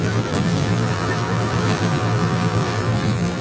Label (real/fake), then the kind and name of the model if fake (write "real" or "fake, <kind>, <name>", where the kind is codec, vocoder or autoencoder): fake, vocoder, BigVGAN v2